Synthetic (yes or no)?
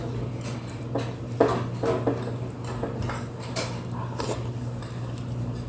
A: no